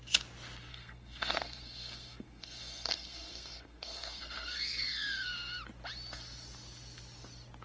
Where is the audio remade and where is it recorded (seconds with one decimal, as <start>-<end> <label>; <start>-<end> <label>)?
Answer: 0.0-0.7 recorded; 0.7-5.3 remade; 5.3-7.6 recorded